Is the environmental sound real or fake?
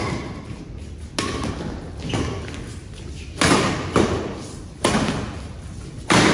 real